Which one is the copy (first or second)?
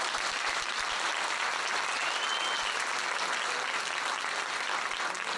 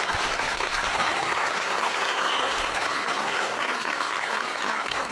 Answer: second